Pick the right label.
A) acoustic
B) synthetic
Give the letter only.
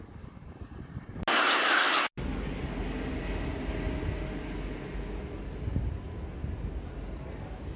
A